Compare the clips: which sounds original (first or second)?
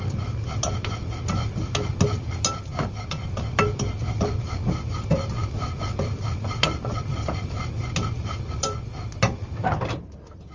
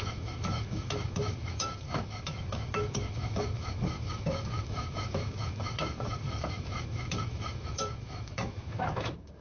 first